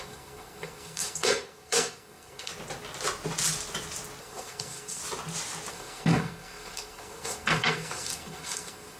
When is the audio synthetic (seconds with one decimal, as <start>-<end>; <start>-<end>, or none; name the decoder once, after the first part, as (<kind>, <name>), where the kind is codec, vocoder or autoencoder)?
0.0-2.5 (codec, SNAC); 4.2-5.0; 5.7-9.0